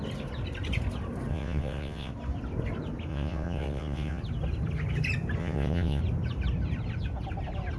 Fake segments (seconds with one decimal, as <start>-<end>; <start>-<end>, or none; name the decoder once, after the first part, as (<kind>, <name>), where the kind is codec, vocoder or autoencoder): 1.3-2.1 (vocoder, WaveNeXt); 3.1-4.2; 5.4-6.0